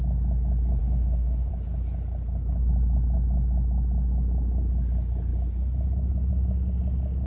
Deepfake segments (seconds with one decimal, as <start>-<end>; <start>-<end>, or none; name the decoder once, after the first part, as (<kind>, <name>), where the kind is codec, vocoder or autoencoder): 0.8-1.5 (autoencoder, DAC-VAE)